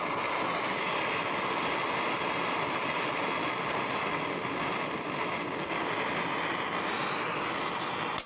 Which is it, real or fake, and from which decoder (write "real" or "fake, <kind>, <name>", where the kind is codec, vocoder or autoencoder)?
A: real